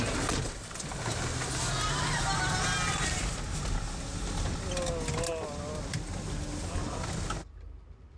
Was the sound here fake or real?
real